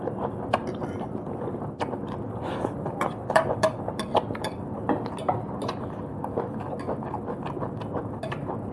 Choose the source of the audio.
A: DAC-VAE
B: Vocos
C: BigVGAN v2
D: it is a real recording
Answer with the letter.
D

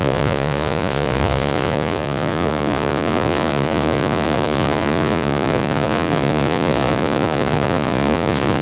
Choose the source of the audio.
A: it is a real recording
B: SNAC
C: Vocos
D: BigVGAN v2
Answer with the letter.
C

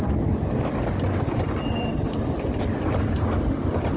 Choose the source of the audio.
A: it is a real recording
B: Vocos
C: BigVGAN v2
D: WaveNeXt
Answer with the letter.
A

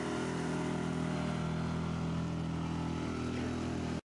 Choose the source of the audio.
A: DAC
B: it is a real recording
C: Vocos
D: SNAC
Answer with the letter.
B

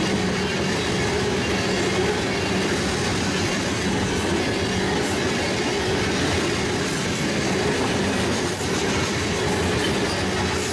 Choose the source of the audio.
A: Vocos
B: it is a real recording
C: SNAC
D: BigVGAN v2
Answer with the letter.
B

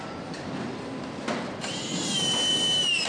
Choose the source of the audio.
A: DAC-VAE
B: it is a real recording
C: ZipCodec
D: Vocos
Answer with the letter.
B